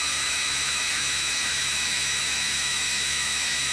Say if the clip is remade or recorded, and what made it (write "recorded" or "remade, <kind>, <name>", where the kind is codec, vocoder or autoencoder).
remade, autoencoder, DAC-VAE